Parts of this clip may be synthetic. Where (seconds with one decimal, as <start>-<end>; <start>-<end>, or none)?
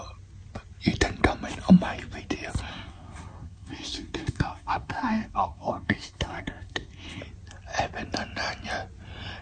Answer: 2.7-7.2